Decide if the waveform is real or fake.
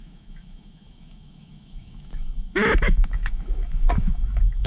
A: fake